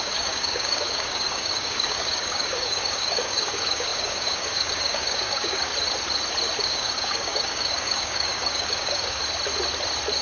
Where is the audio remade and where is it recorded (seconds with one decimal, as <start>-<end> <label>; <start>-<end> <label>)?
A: 0.0-5.7 remade; 5.7-6.6 recorded; 6.6-9.2 remade; 9.2-10.2 recorded